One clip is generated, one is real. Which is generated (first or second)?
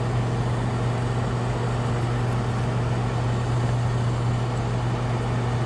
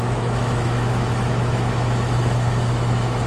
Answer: second